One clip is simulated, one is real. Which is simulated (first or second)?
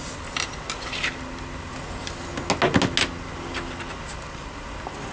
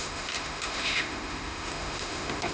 second